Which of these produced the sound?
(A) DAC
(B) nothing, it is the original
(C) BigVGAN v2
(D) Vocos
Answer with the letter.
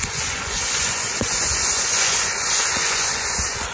D